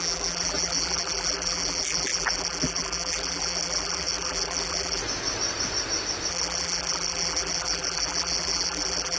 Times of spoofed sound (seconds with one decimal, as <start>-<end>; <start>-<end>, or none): 0.0-5.0; 6.3-9.2